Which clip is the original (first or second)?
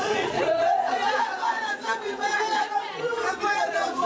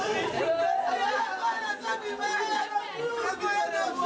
second